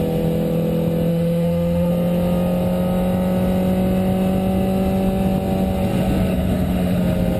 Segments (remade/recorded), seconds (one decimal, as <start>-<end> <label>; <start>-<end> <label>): 0.0-1.1 recorded; 1.1-1.9 remade; 1.9-6.3 recorded; 6.3-7.0 remade; 7.0-7.4 recorded